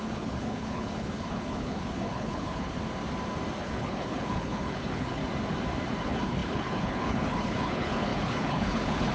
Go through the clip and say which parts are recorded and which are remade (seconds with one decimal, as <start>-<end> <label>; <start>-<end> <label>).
0.0-2.8 remade; 2.8-3.6 recorded; 3.6-5.2 remade; 5.2-6.0 recorded; 6.0-9.1 remade